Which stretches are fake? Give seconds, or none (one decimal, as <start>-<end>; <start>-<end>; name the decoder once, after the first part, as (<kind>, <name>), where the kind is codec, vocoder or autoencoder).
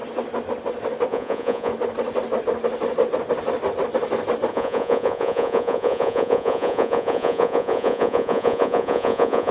1.1-1.7 (vocoder, Vocos); 4.5-9.5